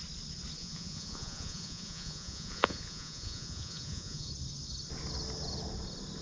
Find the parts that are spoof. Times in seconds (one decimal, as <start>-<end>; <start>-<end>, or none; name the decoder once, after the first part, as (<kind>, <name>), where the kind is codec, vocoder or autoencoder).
0.6-4.3 (vocoder, Vocos)